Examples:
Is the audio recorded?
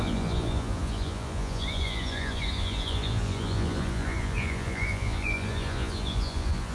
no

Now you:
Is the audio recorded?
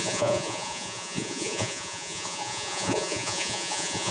no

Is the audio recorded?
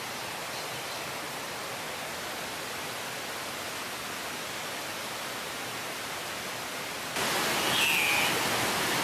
yes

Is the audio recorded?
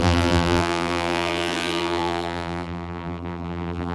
no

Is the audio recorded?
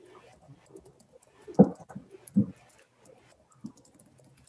yes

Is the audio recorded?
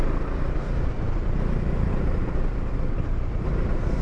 yes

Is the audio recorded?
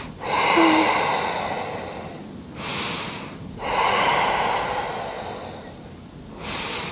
yes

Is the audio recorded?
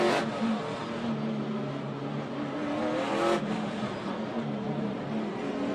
yes